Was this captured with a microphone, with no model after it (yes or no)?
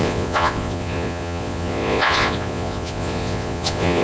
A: no